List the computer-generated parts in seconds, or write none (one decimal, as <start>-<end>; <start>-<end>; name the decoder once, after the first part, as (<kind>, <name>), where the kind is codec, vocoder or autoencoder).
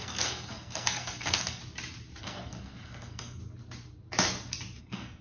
0.0-1.6 (codec, SNAC); 2.2-3.4; 4.8-5.2